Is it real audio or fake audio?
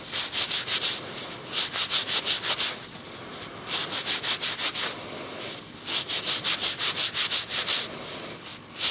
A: real